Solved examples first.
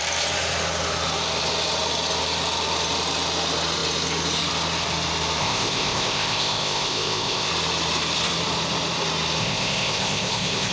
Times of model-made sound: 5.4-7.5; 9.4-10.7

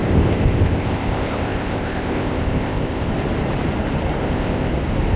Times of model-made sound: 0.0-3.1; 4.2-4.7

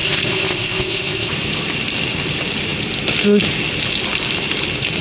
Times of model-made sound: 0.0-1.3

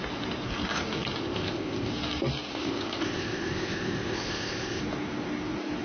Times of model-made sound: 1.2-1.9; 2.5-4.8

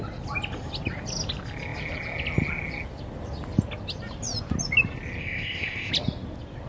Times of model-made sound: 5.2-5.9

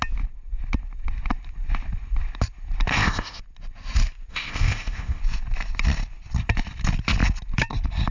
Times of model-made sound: 2.9-3.4; 4.3-5.2